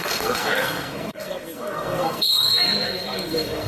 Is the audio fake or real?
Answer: fake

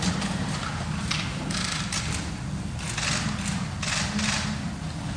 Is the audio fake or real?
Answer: real